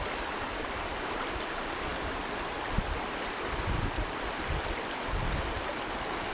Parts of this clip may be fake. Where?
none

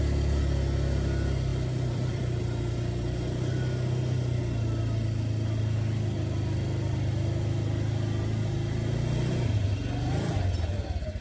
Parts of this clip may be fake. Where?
1.5-2.4 (vocoder, BigVGAN v2)

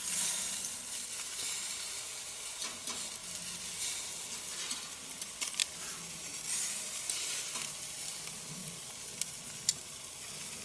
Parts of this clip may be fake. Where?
none

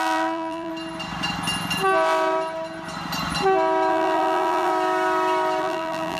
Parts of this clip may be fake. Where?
0.0-0.7 (vocoder, BigVGAN v2); 3.9-4.7; 5.6-6.2

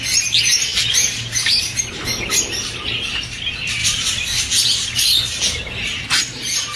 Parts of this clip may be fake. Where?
3.8-4.4 (vocoder, BigVGAN v2)

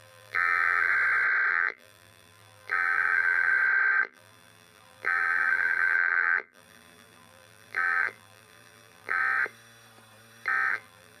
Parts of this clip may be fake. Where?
0.0-0.9 (vocoder, BigVGAN v2); 1.5-3.5; 4.0-9.2; 10.7-11.2

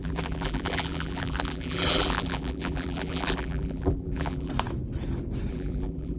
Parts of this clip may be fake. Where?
0.0-4.5 (vocoder, BigVGAN v2); 5.5-6.2

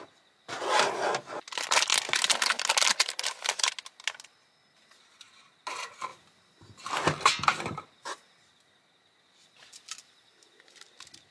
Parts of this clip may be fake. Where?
6.1-6.9 (vocoder, BigVGAN v2)